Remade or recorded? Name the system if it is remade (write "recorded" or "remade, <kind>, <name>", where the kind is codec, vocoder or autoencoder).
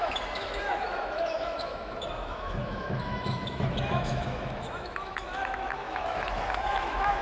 remade, autoencoder, DAC-VAE